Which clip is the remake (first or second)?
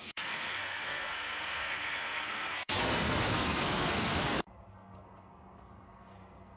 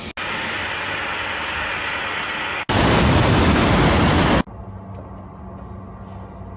first